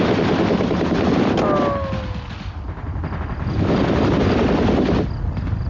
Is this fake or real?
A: real